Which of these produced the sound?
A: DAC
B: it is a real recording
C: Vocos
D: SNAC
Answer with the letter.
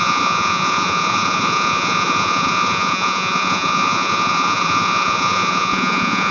C